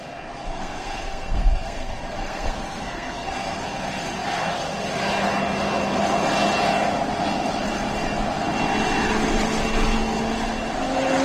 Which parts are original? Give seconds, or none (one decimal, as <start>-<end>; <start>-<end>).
0.0-0.5; 3.6-11.2